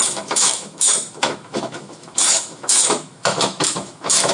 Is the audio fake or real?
fake